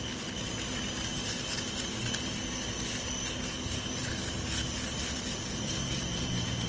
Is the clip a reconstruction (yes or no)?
no